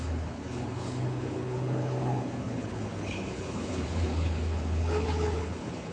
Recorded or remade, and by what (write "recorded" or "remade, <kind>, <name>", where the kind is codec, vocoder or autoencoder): remade, codec, HILCodec